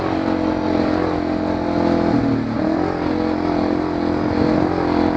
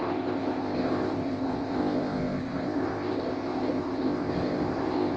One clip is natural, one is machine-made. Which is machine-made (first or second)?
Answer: second